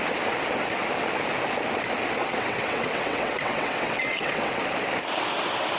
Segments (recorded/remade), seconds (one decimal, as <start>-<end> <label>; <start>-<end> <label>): 0.0-2.2 recorded; 2.2-4.6 remade; 4.6-5.8 recorded